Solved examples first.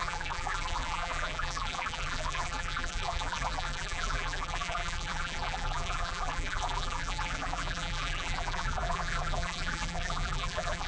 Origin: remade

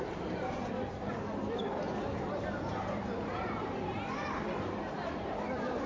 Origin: remade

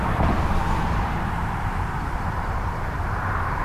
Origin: remade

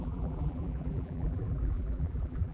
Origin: remade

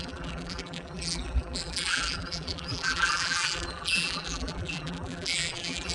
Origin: remade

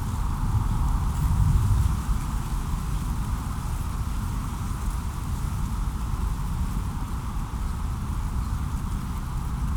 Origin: recorded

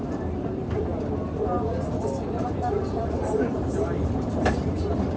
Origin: remade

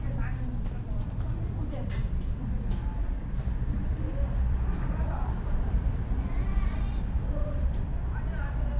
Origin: remade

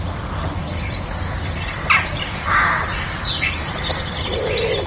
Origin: recorded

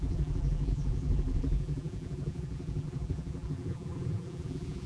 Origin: remade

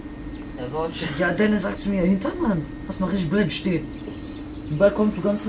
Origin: recorded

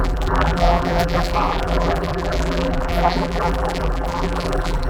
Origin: remade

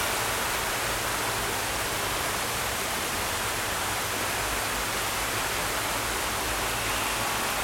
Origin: recorded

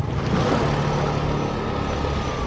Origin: recorded